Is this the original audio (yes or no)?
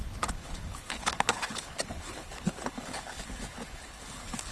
no